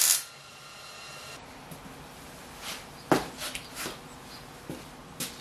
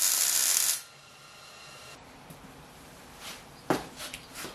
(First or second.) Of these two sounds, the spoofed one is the second